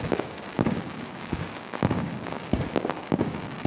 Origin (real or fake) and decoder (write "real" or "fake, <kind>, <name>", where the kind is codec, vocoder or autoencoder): fake, codec, DAC